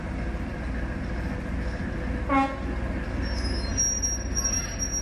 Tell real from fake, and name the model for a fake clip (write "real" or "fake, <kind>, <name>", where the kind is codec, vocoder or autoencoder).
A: real